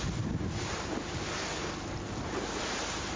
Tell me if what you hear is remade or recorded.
recorded